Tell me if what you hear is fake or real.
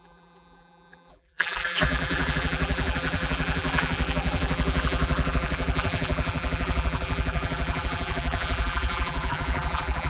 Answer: fake